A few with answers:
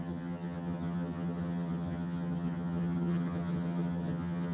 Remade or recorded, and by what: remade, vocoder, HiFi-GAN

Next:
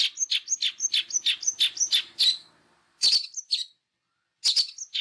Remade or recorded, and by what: recorded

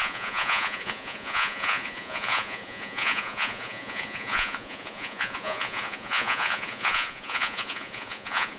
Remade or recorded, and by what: remade, vocoder, Vocos